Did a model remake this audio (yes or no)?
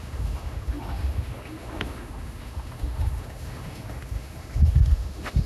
yes